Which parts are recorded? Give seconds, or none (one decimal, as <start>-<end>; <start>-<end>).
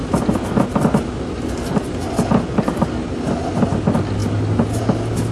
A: 0.0-5.3